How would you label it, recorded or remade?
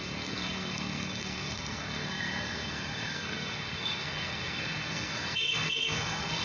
remade